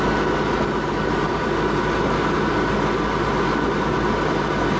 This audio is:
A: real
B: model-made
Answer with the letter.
A